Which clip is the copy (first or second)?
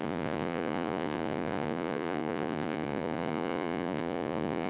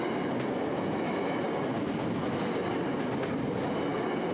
first